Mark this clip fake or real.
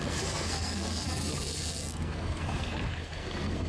fake